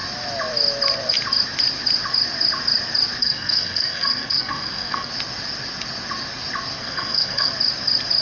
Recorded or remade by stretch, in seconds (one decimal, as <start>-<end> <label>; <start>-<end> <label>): 0.0-3.2 recorded; 3.2-5.1 remade; 5.1-6.8 recorded; 6.8-7.5 remade; 7.5-8.2 recorded